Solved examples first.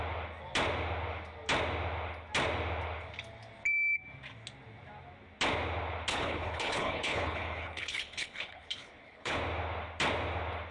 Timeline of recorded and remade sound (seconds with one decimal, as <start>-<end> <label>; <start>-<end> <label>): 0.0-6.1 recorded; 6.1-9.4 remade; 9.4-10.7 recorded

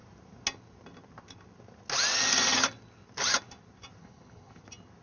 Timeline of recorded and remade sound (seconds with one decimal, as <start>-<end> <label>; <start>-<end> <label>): 0.0-4.0 recorded; 4.0-4.6 remade; 4.6-5.0 recorded

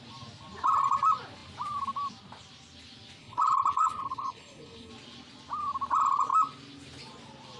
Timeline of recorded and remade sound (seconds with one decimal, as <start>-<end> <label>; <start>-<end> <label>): 0.0-3.2 recorded; 3.2-4.9 remade; 4.9-7.6 recorded